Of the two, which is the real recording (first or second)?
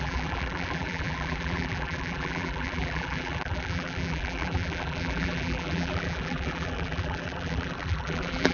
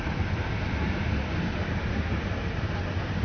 second